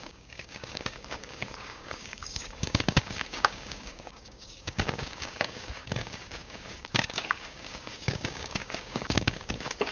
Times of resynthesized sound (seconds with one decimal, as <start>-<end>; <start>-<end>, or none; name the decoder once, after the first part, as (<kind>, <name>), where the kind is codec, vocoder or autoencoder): 0.0-9.9 (codec, DAC)